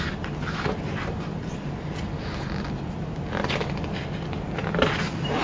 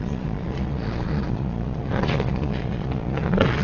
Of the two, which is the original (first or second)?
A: first